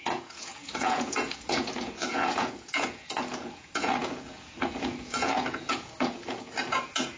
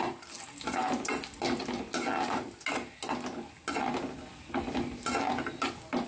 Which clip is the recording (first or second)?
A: second